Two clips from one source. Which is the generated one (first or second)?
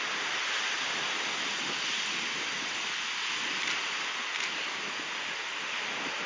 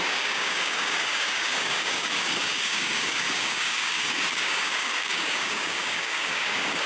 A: second